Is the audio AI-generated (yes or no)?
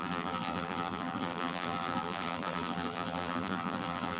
yes